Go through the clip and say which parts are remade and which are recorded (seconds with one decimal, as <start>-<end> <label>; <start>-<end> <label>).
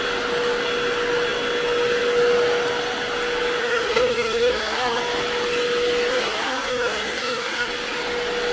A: 0.0-3.6 recorded; 3.6-5.0 remade; 5.0-6.1 recorded; 6.1-7.7 remade; 7.7-8.5 recorded